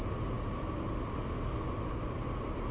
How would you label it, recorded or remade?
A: recorded